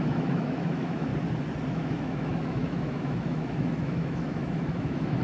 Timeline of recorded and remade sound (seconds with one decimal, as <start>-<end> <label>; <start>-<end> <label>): 0.0-1.1 remade; 1.1-1.7 recorded; 1.7-5.2 remade

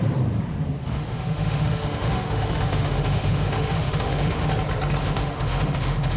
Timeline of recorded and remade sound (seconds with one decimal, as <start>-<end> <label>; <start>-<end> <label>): 0.0-0.8 recorded; 0.8-4.5 remade; 4.5-5.0 recorded; 5.0-6.2 remade

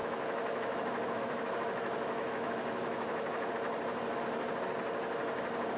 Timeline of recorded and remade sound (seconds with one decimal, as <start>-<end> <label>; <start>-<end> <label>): 0.0-3.5 remade; 3.5-5.8 recorded

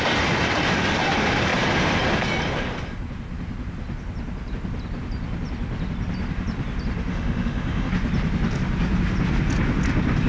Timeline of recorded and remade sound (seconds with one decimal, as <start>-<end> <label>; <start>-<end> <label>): 0.0-7.1 recorded; 7.1-7.9 remade; 7.9-10.3 recorded

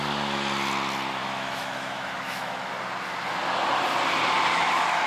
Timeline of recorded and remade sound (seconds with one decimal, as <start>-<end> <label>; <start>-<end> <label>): 0.0-1.2 recorded; 1.2-2.7 remade; 2.7-4.5 recorded; 4.5-5.1 remade